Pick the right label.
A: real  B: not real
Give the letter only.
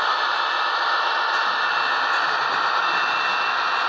A